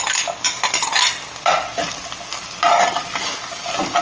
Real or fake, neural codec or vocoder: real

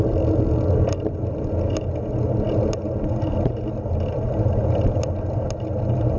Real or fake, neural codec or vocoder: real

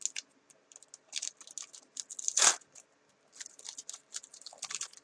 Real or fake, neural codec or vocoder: real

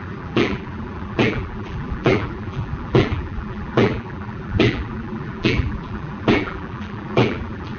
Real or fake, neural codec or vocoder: fake, vocoder, BigVGAN v2